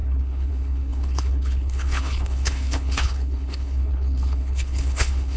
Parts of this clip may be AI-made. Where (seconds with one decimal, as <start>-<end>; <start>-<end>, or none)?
0.0-5.4